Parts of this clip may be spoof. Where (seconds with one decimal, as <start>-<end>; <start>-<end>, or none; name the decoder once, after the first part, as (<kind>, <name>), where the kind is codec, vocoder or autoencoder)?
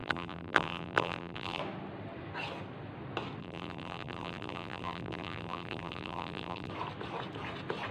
0.0-1.6 (vocoder, BigVGAN v2); 3.4-6.7